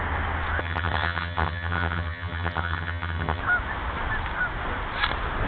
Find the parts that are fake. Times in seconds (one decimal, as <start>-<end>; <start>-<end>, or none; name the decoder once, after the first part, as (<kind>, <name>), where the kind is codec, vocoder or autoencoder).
0.6-3.4 (vocoder, HiFi-GAN)